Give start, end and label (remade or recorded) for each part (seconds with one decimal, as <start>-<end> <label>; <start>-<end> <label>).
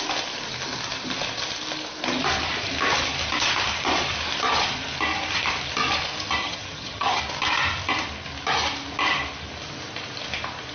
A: 0.0-6.4 recorded; 6.4-7.2 remade; 7.2-10.7 recorded